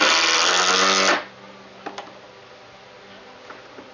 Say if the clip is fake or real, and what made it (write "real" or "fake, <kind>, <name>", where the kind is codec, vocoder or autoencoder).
real